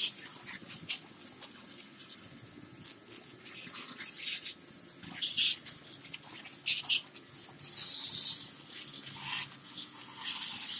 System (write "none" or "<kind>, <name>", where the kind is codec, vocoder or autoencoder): none